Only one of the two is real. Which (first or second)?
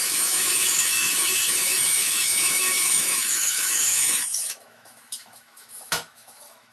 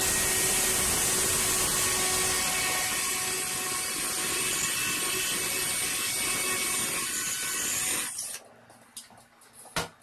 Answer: second